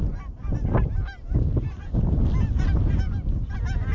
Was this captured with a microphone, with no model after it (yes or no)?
yes